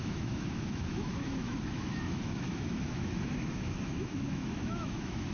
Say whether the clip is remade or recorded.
remade